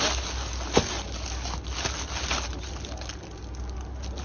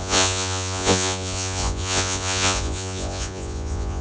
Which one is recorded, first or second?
first